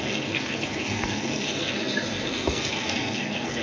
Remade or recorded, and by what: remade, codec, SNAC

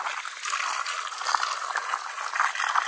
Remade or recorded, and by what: recorded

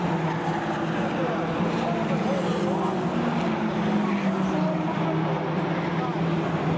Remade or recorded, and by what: recorded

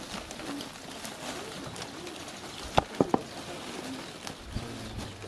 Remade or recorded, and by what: recorded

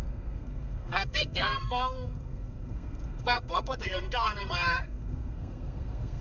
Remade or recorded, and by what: remade, codec, SNAC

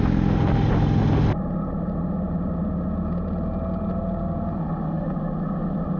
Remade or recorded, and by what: recorded